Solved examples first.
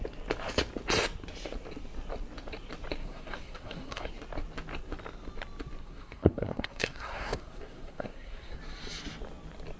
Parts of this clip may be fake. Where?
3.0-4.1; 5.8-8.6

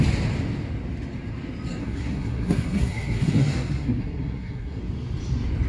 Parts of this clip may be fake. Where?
1.8-4.8

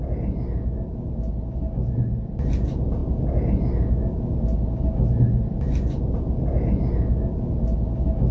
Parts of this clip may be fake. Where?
none

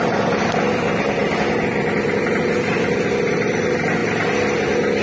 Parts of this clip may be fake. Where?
none